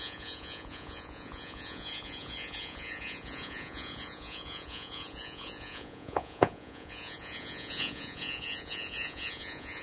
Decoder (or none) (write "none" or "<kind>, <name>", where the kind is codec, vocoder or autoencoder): vocoder, Vocos